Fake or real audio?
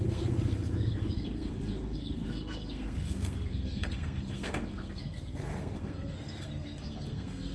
fake